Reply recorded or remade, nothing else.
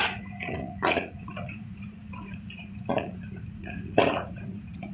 remade